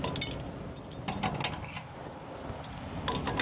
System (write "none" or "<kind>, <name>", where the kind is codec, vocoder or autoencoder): none